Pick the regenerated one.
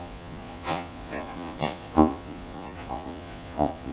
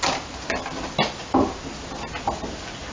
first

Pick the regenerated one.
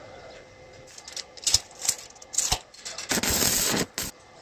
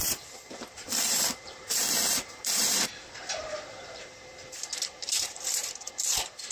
second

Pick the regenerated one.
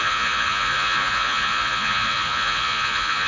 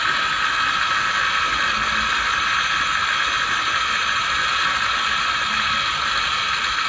first